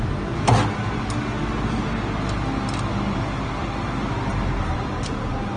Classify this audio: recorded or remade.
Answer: recorded